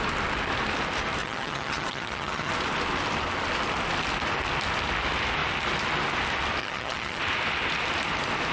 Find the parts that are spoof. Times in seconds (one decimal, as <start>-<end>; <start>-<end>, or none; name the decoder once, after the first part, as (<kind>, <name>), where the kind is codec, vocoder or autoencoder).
1.2-2.5 (vocoder, HiFi-GAN); 6.6-7.2